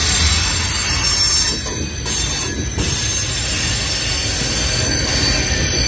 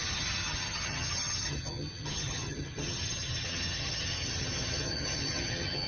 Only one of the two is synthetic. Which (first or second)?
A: second